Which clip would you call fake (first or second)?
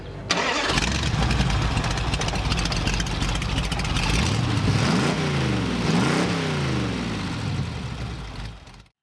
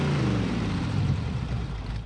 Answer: second